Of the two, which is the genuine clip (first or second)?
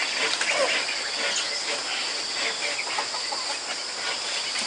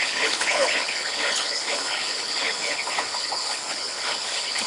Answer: first